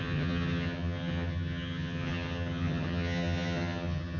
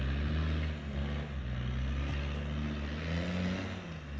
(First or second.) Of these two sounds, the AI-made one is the first